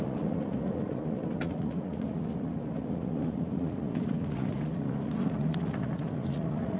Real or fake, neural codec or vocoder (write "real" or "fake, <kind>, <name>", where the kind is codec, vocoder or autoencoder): fake, vocoder, Vocos